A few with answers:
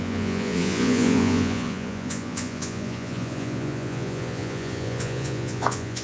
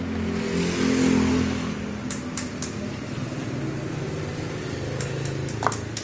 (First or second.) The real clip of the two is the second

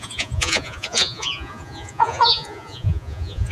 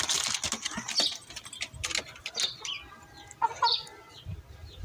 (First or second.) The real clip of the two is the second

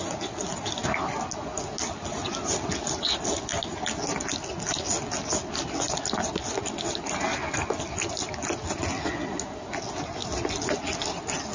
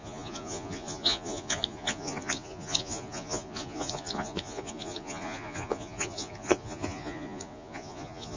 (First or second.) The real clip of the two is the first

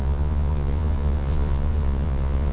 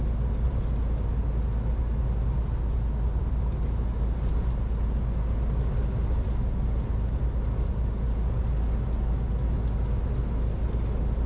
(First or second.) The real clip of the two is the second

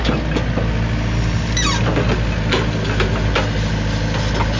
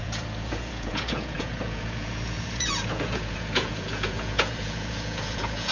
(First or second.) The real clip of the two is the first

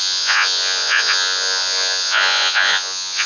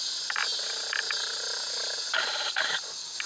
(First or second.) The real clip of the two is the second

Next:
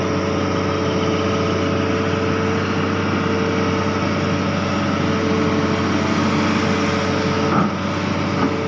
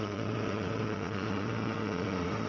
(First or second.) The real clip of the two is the first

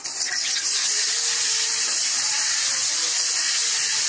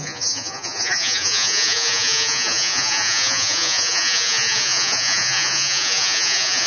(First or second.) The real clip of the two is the first